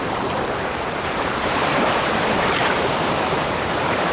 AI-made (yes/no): yes